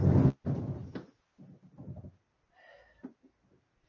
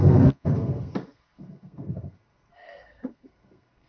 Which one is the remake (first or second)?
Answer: second